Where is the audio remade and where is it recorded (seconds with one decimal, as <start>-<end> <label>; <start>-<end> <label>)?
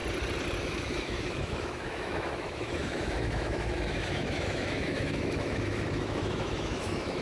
0.0-0.6 recorded; 0.6-7.2 remade